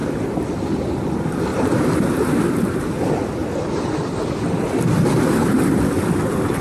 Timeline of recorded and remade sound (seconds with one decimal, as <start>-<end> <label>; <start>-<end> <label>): 0.0-1.5 recorded; 1.5-2.9 remade; 2.9-6.6 recorded